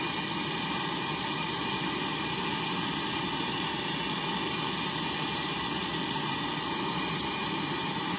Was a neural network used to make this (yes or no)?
no